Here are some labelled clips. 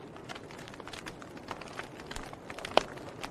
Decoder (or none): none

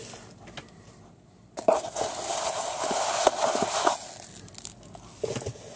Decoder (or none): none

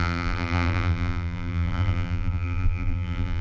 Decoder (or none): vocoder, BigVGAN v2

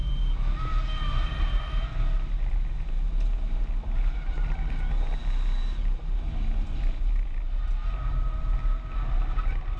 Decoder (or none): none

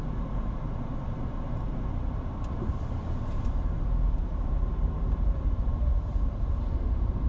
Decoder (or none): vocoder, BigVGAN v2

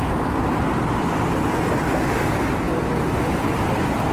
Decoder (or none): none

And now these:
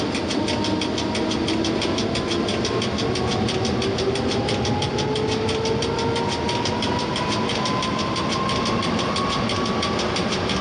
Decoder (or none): none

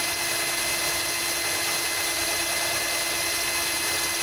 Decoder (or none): none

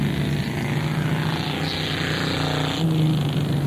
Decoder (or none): none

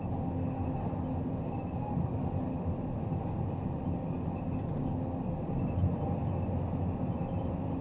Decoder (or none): none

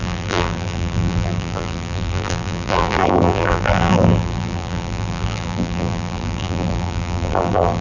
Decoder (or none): vocoder, BigVGAN v2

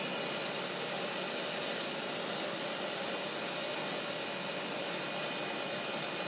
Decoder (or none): none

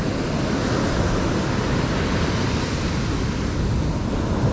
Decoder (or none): none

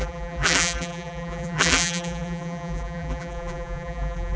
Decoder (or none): vocoder, BigVGAN v2